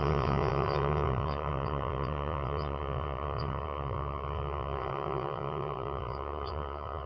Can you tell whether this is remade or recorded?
remade